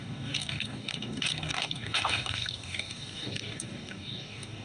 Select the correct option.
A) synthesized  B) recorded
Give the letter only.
A